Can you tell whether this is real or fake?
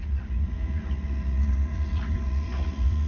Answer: fake